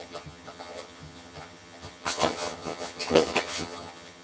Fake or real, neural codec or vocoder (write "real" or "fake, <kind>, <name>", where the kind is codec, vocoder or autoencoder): fake, vocoder, HiFi-GAN